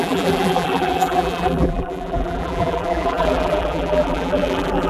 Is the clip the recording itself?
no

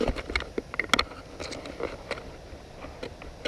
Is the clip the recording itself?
yes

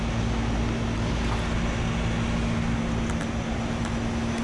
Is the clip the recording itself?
yes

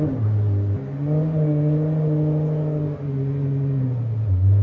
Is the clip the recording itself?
yes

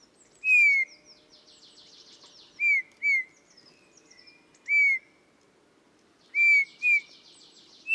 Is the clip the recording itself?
yes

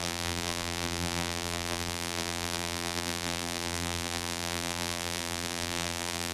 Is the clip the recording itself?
no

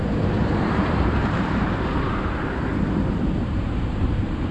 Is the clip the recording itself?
no